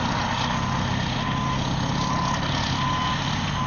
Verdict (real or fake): real